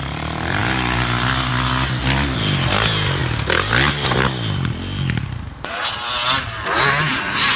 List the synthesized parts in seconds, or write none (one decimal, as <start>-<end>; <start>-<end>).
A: none